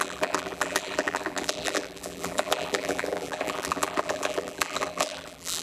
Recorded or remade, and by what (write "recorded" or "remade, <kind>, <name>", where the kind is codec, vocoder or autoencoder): remade, vocoder, BigVGAN v2